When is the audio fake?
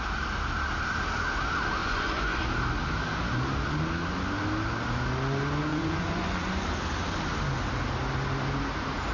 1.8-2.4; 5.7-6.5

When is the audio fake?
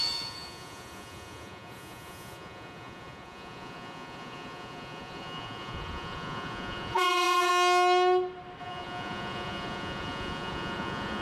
0.0-7.5; 8.6-11.2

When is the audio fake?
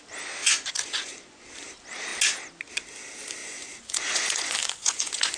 0.4-1.4; 3.4-5.4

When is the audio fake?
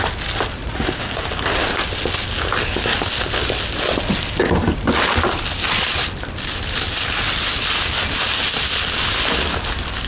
0.6-1.1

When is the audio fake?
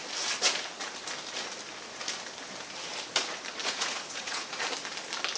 3.6-4.6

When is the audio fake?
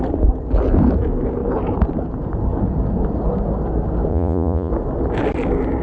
4.1-4.7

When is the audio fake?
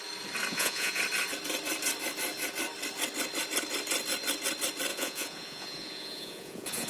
0.5-1.0; 4.9-6.9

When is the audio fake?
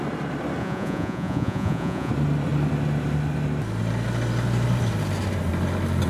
0.6-2.1